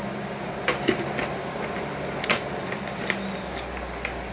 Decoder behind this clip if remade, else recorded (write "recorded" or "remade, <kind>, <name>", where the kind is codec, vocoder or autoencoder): recorded